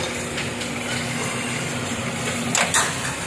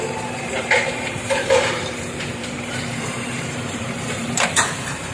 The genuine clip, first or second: first